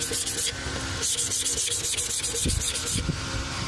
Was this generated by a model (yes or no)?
no